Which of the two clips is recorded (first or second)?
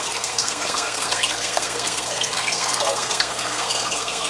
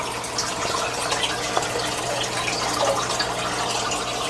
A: second